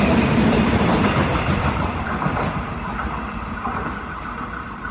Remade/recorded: remade